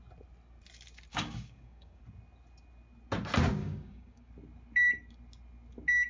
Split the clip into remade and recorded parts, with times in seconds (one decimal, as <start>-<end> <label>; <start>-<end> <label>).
0.0-1.1 recorded; 1.1-2.0 remade; 2.0-3.6 recorded; 3.6-4.3 remade; 4.3-6.1 recorded